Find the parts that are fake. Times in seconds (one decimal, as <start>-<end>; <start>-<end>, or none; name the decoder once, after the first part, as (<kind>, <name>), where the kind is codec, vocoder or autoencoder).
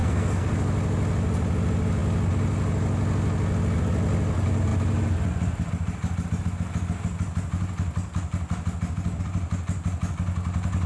0.0-0.5 (codec, SNAC)